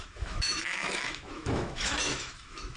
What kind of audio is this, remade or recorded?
remade